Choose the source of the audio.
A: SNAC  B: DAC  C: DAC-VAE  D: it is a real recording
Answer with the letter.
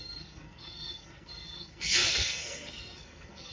A